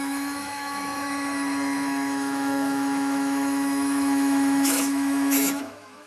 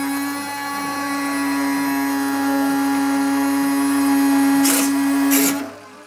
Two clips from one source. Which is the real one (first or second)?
second